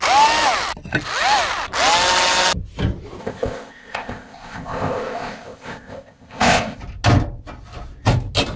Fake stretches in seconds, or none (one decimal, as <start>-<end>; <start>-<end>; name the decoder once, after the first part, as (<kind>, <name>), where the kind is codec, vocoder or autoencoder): 3.2-6.8 (codec, ZipCodec)